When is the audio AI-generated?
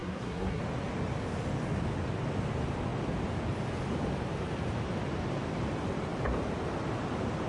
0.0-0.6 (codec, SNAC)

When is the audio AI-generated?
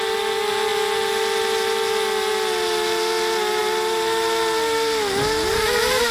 none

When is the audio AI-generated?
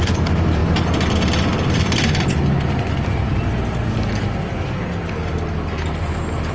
none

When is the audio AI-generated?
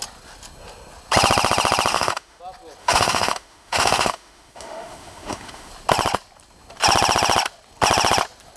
1.9-2.4 (autoencoder, DAC-VAE); 2.8-5.7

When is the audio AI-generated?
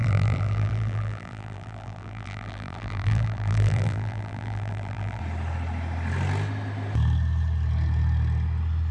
0.0-5.2 (vocoder, BigVGAN v2)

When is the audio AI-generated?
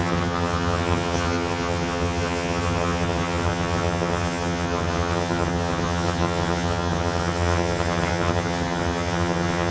0.0-9.7 (vocoder, HiFi-GAN)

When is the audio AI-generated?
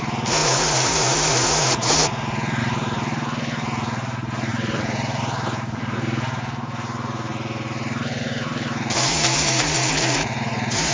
0.0-2.0 (vocoder, BigVGAN v2); 2.6-10.9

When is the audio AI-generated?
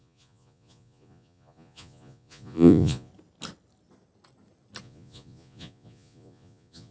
0.0-3.1 (vocoder, Vocos); 4.8-6.9